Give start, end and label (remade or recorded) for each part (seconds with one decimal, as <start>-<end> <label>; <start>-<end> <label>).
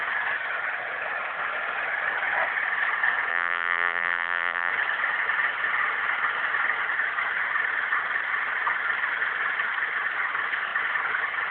0.0-3.3 recorded; 3.3-4.7 remade; 4.7-11.5 recorded